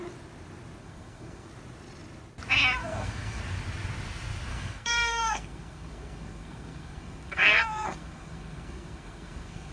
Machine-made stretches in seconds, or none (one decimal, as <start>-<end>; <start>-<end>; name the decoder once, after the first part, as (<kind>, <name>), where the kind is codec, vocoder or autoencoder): 0.8-1.5 (codec, SNAC); 2.8-3.4; 4.5-9.7